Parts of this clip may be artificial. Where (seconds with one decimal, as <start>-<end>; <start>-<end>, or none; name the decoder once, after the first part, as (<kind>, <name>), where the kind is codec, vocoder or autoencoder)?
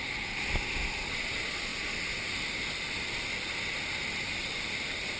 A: none